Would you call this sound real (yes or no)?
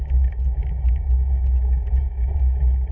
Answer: no